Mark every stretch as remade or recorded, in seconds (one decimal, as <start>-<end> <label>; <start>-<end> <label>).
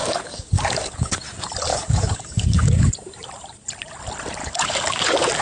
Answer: 0.0-1.2 remade; 1.2-1.7 recorded; 1.7-2.9 remade; 2.9-4.4 recorded; 4.4-5.4 remade